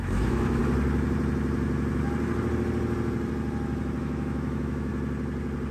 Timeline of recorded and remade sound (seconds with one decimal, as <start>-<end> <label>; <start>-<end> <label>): 0.0-0.6 remade; 0.6-4.0 recorded; 4.0-4.9 remade; 4.9-5.7 recorded